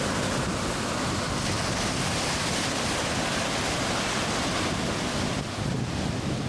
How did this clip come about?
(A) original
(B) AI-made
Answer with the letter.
A